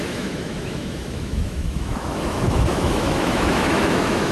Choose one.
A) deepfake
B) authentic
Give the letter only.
A